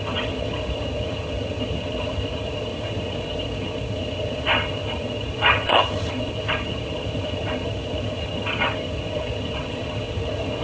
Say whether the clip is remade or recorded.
remade